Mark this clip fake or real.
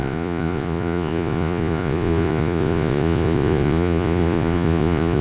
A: fake